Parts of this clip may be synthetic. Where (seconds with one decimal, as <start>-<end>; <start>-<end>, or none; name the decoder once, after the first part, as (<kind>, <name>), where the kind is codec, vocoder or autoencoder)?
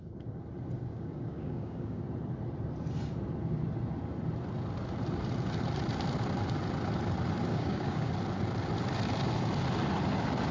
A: 0.9-2.0 (codec, DAC); 7.5-8.1